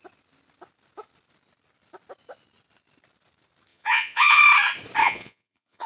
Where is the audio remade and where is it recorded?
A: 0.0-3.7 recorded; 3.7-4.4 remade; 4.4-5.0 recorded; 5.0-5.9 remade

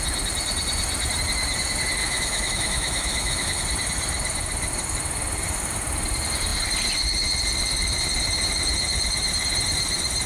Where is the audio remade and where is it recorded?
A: 0.0-2.0 recorded; 2.0-3.6 remade; 3.6-10.3 recorded

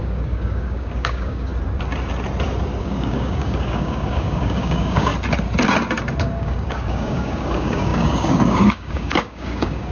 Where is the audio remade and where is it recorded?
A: 0.0-1.5 remade; 1.5-2.8 recorded; 2.8-5.1 remade; 5.1-6.2 recorded; 6.2-9.9 remade

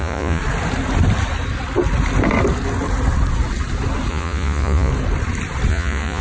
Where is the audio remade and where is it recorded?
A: 0.0-0.4 remade; 0.4-4.1 recorded; 4.1-4.9 remade; 4.9-5.7 recorded; 5.7-6.2 remade